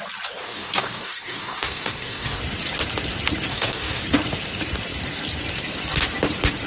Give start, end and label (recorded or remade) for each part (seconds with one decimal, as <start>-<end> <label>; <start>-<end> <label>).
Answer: 0.0-0.4 recorded; 0.4-2.4 remade; 2.4-3.5 recorded; 3.5-4.0 remade; 4.0-6.7 recorded